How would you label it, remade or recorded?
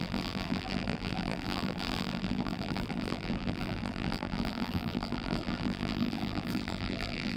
remade